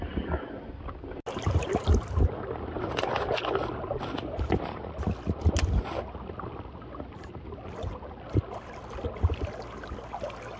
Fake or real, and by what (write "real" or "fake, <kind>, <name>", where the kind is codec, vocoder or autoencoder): real